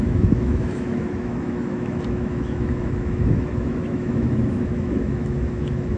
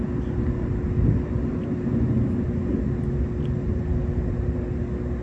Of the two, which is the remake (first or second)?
first